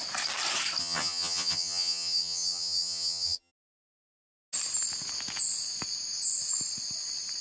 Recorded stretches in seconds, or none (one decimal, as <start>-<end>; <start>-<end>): 0.0-0.8; 3.5-7.4